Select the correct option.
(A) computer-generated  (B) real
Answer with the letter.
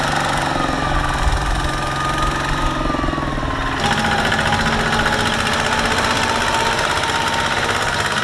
B